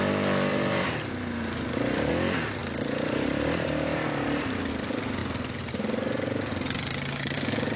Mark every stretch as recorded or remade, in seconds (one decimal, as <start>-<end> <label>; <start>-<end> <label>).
0.0-0.5 recorded; 0.5-2.1 remade; 2.1-2.6 recorded; 2.6-4.7 remade; 4.7-5.2 recorded; 5.2-5.7 remade; 5.7-7.8 recorded